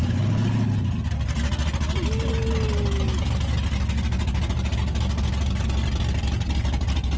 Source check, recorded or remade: recorded